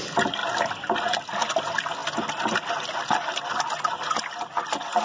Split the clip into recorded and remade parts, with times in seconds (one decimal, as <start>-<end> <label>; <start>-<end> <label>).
0.0-5.0 recorded